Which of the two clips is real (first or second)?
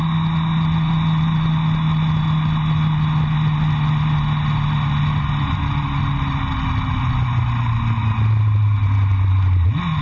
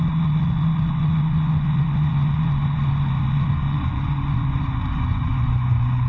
first